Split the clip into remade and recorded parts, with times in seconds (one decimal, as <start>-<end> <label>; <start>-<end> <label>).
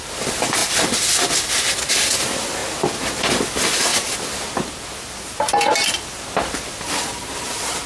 0.0-7.9 recorded